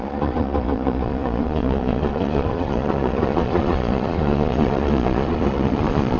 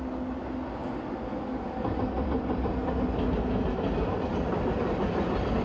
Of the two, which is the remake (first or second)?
first